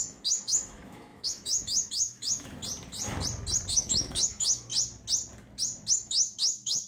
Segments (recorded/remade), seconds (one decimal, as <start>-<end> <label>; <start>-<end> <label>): 0.0-2.6 remade; 2.6-3.7 recorded; 3.7-4.7 remade; 4.7-5.9 recorded; 5.9-6.9 remade